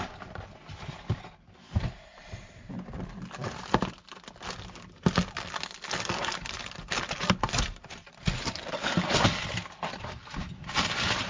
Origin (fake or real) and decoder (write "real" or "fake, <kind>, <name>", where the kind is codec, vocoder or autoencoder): real